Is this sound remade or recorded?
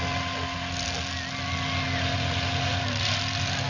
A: recorded